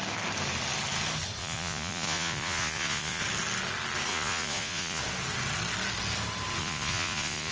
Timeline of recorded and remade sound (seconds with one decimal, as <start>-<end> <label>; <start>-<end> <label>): 0.0-1.4 recorded; 1.4-3.2 remade; 3.2-4.1 recorded; 4.1-5.0 remade; 5.0-6.6 recorded; 6.6-7.5 remade

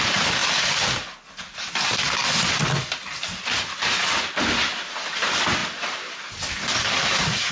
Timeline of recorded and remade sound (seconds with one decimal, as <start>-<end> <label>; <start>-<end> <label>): 0.0-7.5 recorded

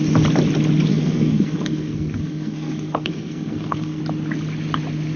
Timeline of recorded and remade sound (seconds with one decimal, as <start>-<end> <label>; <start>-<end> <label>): 0.0-0.9 recorded; 0.9-4.0 remade; 4.0-5.2 recorded

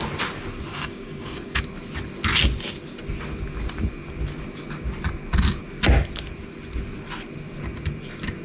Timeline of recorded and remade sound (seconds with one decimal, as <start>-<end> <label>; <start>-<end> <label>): 0.0-0.7 recorded; 0.7-1.6 remade; 1.6-8.4 recorded

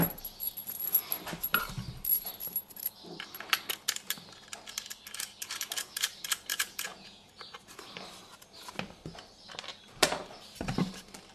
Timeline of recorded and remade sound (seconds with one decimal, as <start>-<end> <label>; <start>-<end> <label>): 0.0-6.5 recorded; 6.5-7.3 remade; 7.3-11.3 recorded